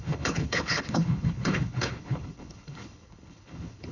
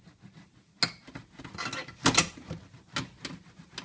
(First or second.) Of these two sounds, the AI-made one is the first